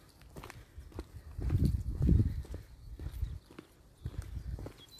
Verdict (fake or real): fake